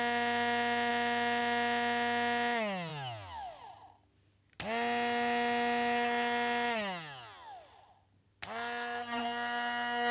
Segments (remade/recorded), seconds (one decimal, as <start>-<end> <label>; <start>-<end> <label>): 0.0-10.1 recorded